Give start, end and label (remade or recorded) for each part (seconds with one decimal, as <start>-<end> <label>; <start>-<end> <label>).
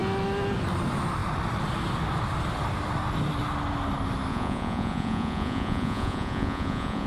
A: 0.0-4.3 recorded; 4.3-7.1 remade